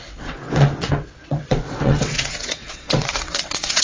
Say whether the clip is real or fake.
fake